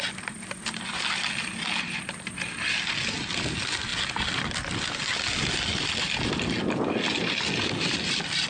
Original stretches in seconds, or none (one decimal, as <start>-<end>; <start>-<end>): 0.0-8.5